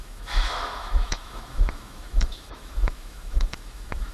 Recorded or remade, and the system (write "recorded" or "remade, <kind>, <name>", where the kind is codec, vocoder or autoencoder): remade, autoencoder, DAC-VAE